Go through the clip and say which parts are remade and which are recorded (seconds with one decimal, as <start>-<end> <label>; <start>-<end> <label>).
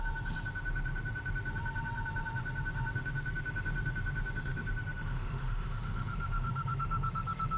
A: 0.0-7.6 remade